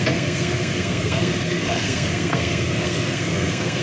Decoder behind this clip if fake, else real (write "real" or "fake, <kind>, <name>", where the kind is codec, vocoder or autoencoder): fake, codec, SNAC